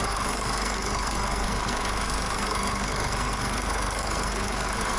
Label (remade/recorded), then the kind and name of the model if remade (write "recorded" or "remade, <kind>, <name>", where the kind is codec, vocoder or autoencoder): remade, codec, SNAC